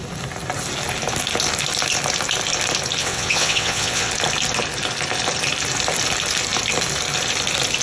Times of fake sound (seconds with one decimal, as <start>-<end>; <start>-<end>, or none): 3.0-4.1